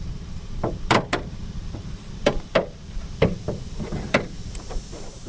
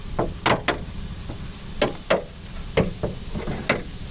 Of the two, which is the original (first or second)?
second